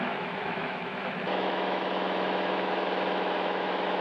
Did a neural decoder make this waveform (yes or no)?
yes